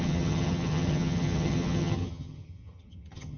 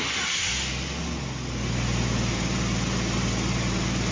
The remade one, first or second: first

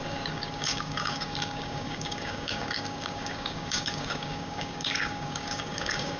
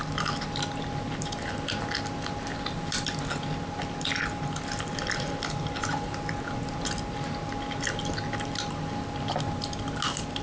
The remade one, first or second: first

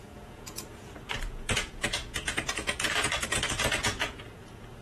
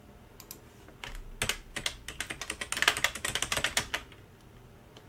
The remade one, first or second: first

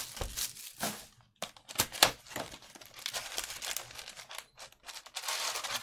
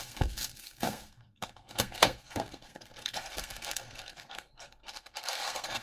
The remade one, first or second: second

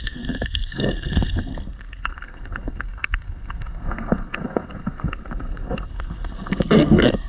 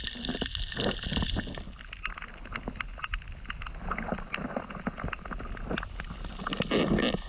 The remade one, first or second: first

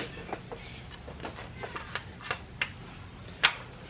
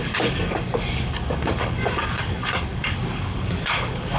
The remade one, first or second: second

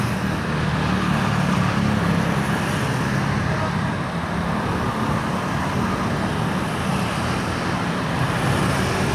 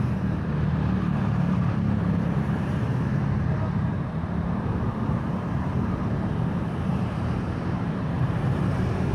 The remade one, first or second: second